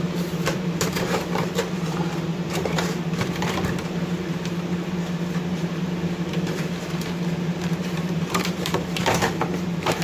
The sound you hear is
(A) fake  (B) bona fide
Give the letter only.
A